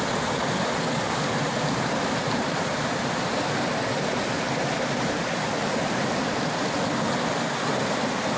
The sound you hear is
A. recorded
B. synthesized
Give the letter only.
A